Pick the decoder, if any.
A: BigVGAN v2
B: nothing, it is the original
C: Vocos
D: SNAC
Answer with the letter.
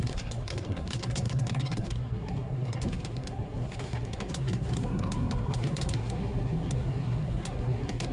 D